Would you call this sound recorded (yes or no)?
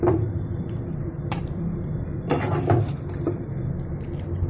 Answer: no